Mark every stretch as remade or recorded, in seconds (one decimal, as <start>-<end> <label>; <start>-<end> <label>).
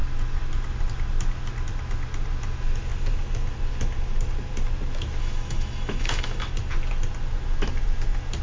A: 0.0-5.2 recorded; 5.2-6.5 remade; 6.5-8.4 recorded